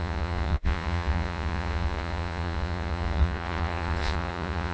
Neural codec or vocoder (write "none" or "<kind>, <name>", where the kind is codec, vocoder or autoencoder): vocoder, Vocos